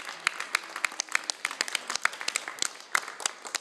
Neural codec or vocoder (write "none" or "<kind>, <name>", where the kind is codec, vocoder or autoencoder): none